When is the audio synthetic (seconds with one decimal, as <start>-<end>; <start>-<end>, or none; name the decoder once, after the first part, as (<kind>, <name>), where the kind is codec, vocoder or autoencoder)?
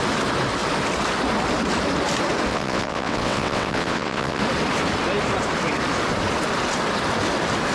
2.5-4.4 (vocoder, WaveNeXt)